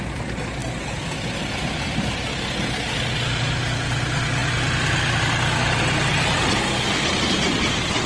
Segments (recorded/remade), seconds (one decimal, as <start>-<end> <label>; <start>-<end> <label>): 0.0-0.6 recorded; 0.6-2.1 remade; 2.1-8.1 recorded